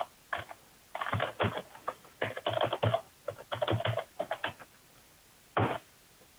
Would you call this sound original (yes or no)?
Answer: yes